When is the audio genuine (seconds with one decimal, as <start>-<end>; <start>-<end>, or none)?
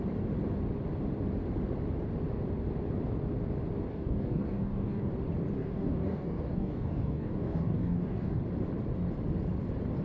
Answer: 0.0-3.9; 5.1-5.6; 8.4-10.0